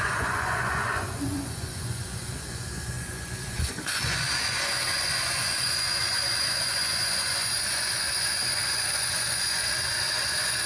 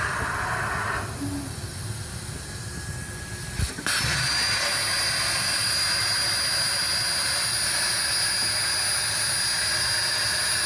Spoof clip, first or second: first